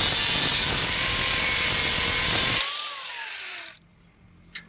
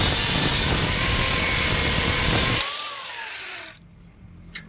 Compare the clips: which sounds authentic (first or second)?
first